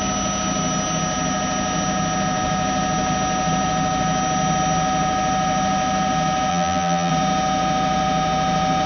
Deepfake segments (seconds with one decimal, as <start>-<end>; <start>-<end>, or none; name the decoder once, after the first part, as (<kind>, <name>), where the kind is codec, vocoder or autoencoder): 6.5-7.1 (vocoder, BigVGAN v2)